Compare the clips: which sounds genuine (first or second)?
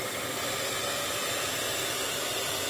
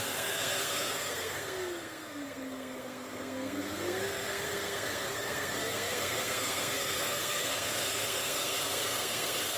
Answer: first